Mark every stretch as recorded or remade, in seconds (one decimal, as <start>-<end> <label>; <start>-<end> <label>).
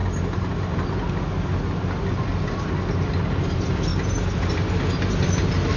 0.0-5.8 recorded